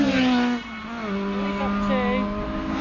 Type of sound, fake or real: real